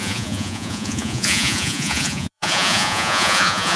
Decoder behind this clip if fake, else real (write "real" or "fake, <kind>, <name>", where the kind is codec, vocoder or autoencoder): fake, vocoder, Vocos